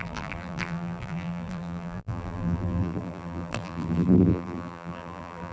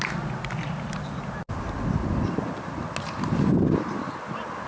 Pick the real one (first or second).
second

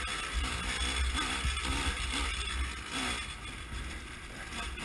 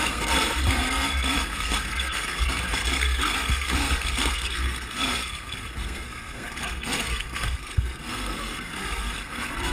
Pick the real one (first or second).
first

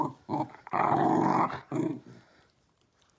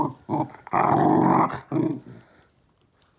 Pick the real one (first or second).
second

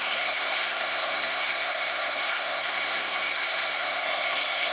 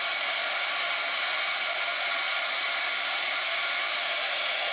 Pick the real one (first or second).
second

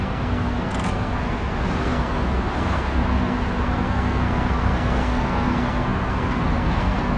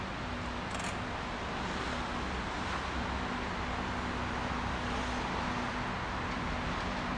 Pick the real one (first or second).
second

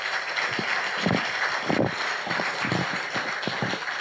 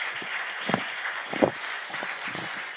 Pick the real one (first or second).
first